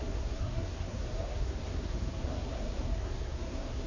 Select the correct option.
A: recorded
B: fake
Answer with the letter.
B